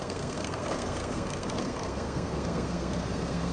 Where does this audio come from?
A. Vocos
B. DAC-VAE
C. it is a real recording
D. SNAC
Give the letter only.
D